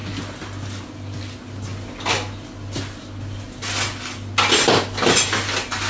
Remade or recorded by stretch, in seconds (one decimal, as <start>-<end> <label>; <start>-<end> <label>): 0.0-5.9 recorded